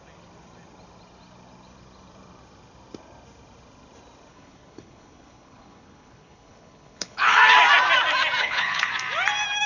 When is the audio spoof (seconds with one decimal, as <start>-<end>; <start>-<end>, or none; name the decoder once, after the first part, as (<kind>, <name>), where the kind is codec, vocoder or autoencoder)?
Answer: 4.3-7.4 (codec, HILCodec); 8.4-8.9